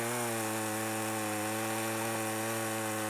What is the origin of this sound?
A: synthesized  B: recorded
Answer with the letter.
B